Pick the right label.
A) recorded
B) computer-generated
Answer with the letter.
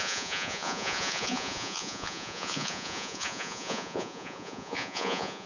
B